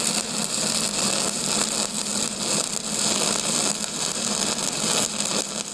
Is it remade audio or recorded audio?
recorded